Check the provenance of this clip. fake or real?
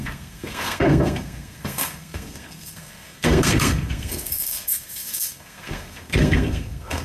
fake